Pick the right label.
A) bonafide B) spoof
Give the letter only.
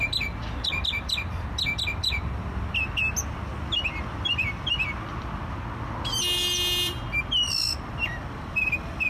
A